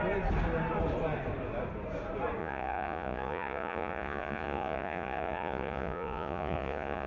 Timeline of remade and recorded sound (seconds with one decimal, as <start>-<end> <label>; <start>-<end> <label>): 0.0-2.4 recorded; 2.4-7.1 remade